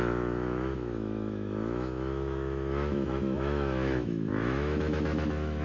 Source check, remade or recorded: remade